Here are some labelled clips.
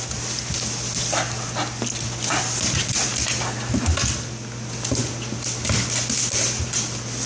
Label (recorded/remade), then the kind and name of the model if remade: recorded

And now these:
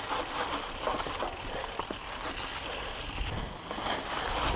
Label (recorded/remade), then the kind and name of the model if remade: remade, vocoder, BigVGAN v2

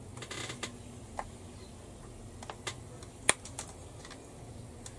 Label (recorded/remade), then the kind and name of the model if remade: recorded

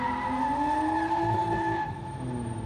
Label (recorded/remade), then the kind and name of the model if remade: recorded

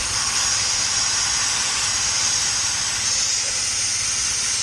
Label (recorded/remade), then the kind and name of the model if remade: remade, vocoder, BigVGAN v2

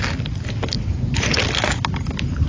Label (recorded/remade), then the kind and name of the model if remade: recorded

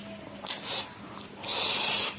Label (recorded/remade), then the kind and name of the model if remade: recorded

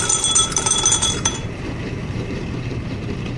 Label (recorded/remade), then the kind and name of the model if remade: remade, vocoder, BigVGAN v2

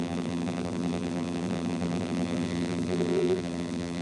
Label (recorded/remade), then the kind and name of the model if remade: remade, vocoder, BigVGAN v2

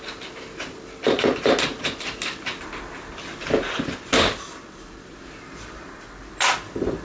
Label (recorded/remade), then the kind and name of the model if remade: recorded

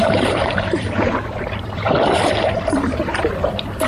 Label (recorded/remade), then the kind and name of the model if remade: remade, vocoder, BigVGAN v2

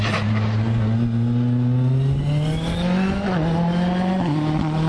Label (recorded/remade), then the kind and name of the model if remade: recorded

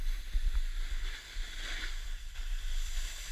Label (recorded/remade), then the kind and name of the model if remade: recorded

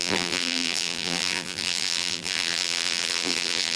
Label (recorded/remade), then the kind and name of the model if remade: remade, vocoder, BigVGAN v2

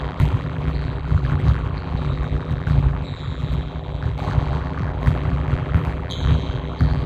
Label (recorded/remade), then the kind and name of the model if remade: remade, vocoder, BigVGAN v2